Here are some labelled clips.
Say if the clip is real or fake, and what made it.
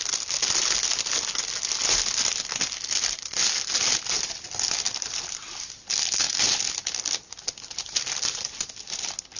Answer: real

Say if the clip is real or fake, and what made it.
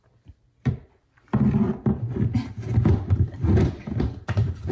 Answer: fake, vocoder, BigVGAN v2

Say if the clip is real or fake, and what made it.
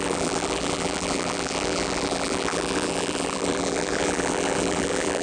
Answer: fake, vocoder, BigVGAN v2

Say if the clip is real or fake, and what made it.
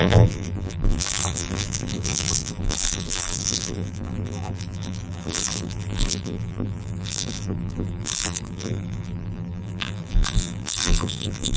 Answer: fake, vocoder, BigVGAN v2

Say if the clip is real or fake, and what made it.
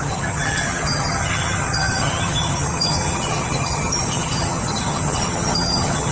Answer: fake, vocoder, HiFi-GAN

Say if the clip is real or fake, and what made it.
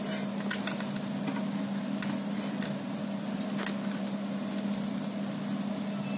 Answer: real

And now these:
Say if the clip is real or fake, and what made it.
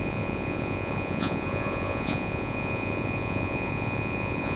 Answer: fake, vocoder, Vocos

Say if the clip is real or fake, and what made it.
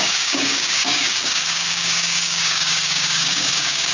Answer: fake, codec, DAC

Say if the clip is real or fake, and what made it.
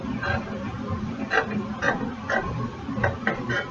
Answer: real